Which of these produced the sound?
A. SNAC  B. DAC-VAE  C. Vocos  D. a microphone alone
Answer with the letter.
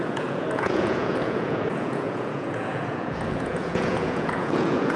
C